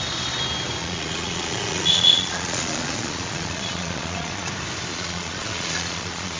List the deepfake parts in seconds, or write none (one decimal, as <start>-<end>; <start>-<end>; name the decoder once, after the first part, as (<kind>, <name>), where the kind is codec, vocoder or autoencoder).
0.8-4.5 (vocoder, Vocos); 4.9-6.4

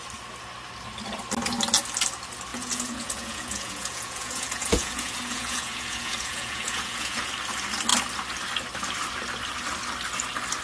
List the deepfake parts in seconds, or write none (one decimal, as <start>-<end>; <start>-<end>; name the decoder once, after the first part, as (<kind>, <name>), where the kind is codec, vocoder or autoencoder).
2.5-7.3 (vocoder, Vocos)

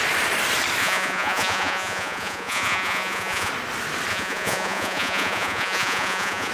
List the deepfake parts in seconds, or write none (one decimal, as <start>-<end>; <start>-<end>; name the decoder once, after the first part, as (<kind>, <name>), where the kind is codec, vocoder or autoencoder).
0.8-3.5 (vocoder, Vocos); 4.1-6.5

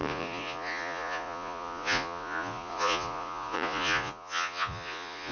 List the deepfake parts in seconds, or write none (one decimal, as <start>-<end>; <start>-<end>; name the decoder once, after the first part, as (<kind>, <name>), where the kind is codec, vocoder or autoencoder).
0.0-5.3 (vocoder, Vocos)

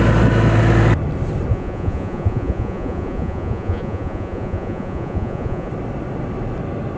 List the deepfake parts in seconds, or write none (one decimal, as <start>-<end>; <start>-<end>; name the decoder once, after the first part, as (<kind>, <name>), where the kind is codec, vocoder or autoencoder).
1.5-5.7 (vocoder, Vocos)

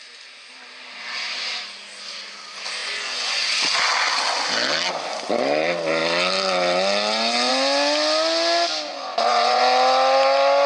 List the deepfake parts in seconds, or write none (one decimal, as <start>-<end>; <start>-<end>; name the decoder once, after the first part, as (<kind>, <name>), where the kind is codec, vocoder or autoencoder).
2.8-3.9 (vocoder, Vocos); 8.9-9.6

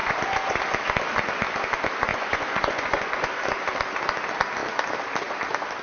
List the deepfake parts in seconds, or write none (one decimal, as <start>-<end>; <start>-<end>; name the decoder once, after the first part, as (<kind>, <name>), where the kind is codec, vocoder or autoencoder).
0.0-0.6 (vocoder, Vocos); 2.1-3.4